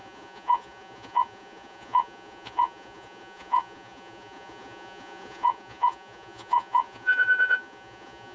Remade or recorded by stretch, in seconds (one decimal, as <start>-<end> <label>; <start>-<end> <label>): 0.0-8.3 remade